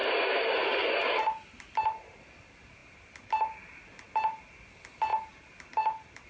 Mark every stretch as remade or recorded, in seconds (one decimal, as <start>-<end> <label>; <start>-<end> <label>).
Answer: 0.0-6.3 recorded